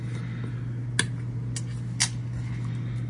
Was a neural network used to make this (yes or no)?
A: no